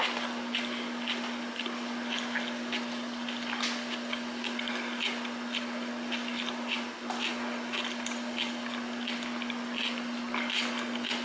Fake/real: real